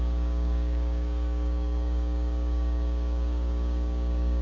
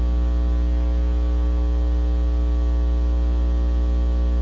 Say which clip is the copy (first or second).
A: first